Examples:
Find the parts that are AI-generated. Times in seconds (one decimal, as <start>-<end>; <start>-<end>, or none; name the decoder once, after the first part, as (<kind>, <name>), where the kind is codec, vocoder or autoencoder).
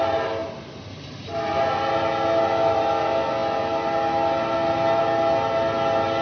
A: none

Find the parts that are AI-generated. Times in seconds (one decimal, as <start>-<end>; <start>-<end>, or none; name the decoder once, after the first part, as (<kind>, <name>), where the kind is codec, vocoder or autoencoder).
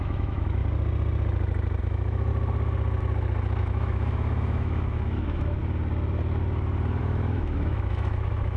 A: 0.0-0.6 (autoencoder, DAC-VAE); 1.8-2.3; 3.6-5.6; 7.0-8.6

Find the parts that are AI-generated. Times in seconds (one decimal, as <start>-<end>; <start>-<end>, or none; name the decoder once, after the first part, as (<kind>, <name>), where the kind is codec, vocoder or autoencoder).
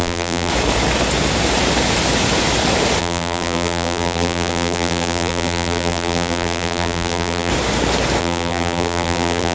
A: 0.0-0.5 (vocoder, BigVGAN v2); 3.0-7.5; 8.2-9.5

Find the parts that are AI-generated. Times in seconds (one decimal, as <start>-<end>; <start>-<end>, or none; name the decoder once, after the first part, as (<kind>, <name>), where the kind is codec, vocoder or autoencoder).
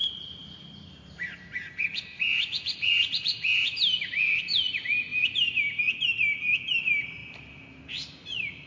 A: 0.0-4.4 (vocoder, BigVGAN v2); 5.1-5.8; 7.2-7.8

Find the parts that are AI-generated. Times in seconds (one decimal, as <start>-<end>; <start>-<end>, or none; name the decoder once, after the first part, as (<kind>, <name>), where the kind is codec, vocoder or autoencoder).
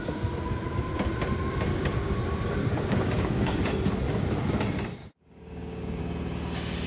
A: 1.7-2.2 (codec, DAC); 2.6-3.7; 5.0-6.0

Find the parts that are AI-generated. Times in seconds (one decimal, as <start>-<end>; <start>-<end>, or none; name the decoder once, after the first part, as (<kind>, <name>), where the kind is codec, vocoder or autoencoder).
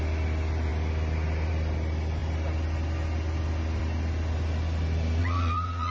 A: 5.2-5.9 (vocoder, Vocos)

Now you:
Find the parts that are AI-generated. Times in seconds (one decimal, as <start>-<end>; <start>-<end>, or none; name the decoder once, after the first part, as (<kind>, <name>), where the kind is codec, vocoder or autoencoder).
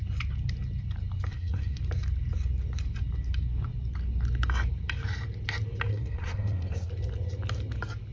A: 1.3-1.8 (codec, SNAC); 5.9-6.9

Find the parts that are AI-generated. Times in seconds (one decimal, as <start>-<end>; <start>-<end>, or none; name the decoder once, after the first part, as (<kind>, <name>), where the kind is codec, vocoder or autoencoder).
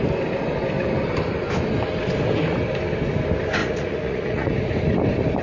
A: 3.6-4.5 (vocoder, Vocos)